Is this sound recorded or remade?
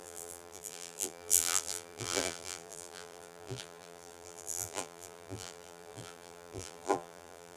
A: remade